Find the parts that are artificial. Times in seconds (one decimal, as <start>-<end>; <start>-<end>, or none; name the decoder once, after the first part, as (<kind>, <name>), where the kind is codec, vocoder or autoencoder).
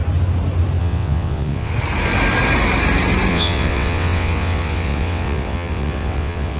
0.8-1.7 (vocoder, WaveNeXt); 3.3-6.6